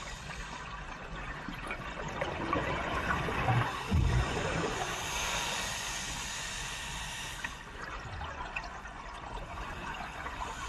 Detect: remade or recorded remade